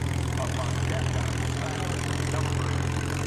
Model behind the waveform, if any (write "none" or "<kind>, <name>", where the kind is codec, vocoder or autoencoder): vocoder, BigVGAN v2